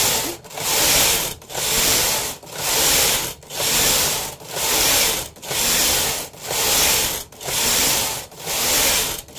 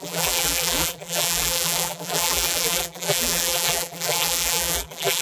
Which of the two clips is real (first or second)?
first